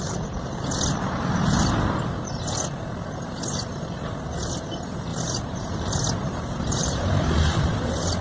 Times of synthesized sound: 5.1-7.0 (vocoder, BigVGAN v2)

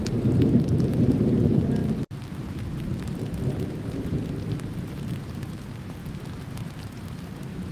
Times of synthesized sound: 0.0-1.8 (vocoder, BigVGAN v2); 2.4-6.0; 6.5-7.7

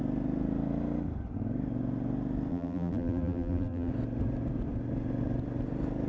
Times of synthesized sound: 2.5-3.9 (vocoder, BigVGAN v2)

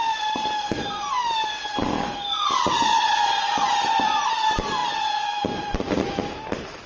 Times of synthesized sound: 0.0-4.8 (vocoder, BigVGAN v2); 6.1-6.9

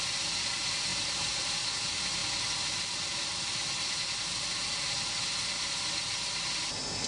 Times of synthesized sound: 0.9-1.5 (vocoder, BigVGAN v2)

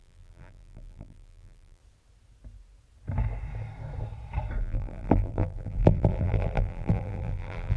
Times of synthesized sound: 0.0-1.8 (vocoder, BigVGAN v2); 4.6-7.8

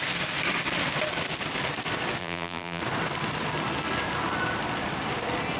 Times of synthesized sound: 2.2-2.8 (vocoder, BigVGAN v2)